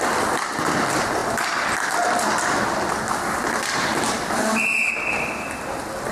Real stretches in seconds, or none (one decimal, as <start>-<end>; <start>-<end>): 1.2-4.9